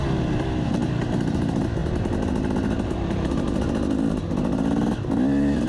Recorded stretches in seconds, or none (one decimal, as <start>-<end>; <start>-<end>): 0.0-5.7